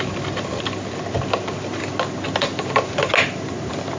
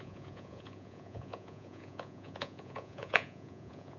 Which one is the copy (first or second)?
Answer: second